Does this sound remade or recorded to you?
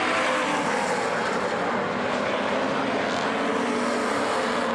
recorded